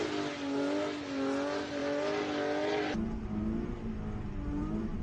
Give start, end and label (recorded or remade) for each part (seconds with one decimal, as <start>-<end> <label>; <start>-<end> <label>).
0.0-5.0 recorded